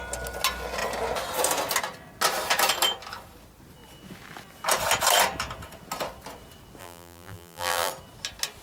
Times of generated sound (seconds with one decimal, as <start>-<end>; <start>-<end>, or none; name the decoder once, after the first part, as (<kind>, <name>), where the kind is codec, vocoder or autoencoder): 6.8-7.9 (vocoder, BigVGAN v2)